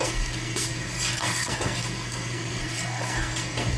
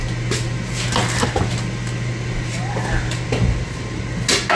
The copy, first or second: first